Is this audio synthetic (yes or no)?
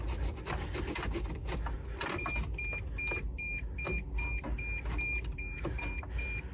no